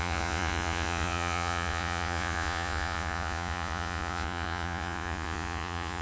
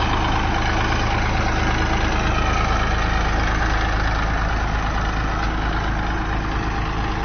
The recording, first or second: second